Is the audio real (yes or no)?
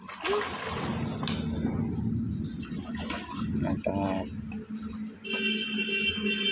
yes